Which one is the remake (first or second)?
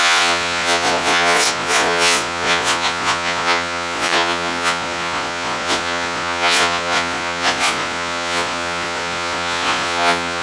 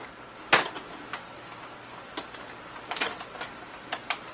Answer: first